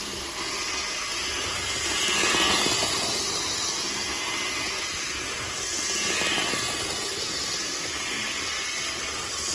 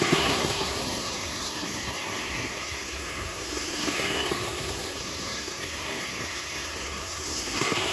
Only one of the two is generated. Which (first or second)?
second